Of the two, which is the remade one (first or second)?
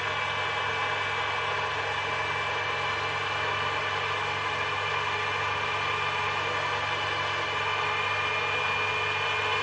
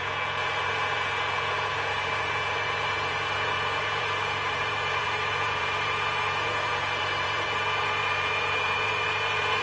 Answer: second